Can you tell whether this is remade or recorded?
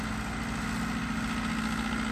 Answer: recorded